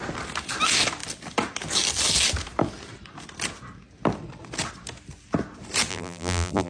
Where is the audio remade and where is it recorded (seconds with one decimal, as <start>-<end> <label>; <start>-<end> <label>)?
0.0-5.9 recorded; 5.9-6.7 remade